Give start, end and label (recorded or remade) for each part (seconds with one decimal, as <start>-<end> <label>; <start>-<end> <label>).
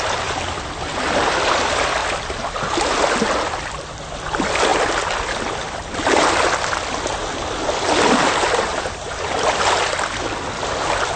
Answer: 0.0-2.0 recorded; 2.0-2.7 remade; 2.7-4.7 recorded; 4.7-9.6 remade; 9.6-11.2 recorded